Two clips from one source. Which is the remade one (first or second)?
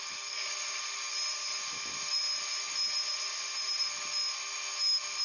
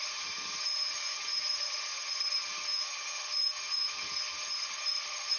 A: second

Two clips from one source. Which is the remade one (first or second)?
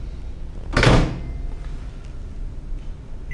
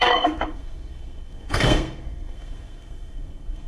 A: second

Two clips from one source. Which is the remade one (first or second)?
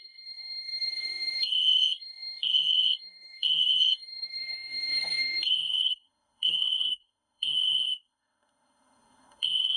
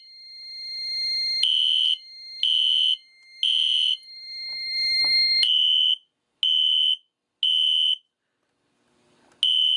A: first